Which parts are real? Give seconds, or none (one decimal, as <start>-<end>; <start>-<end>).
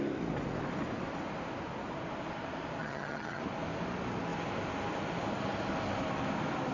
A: 0.0-2.8; 3.4-6.7